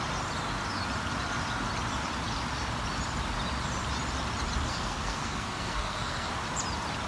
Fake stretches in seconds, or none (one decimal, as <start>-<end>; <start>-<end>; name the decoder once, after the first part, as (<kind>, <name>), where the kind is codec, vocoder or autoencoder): 4.7-6.3 (codec, SNAC)